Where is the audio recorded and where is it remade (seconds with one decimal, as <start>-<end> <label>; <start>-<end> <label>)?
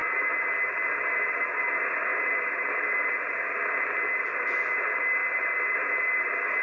0.0-6.6 recorded